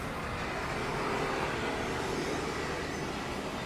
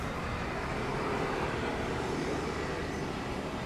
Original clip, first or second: first